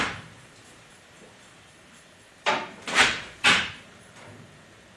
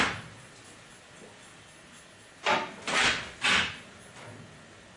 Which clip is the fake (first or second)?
first